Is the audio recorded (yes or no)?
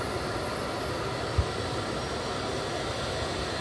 yes